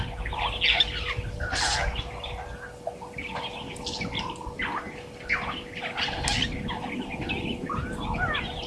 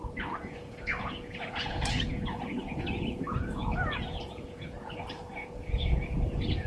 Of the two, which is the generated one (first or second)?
second